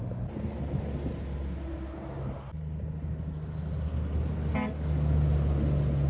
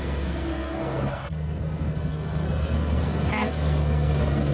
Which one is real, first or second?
first